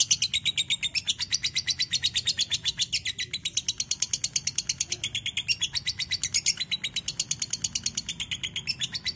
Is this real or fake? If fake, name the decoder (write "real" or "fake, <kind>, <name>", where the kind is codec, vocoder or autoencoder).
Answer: real